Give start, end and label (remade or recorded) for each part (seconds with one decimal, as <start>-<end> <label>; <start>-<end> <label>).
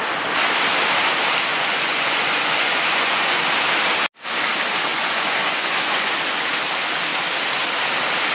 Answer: 0.0-1.5 recorded; 1.5-3.4 remade; 3.4-4.9 recorded; 4.9-6.1 remade; 6.1-8.3 recorded